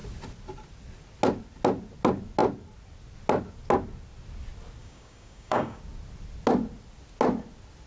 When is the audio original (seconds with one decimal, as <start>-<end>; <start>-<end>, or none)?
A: 0.0-4.8; 5.8-7.9